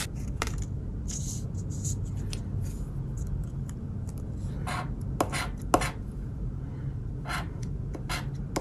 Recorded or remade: recorded